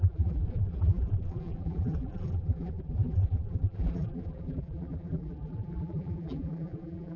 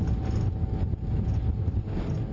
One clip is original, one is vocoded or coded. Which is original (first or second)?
second